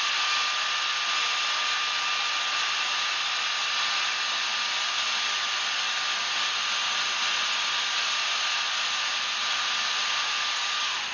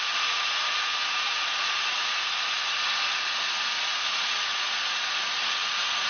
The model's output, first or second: second